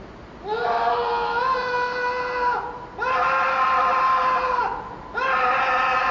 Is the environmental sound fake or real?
real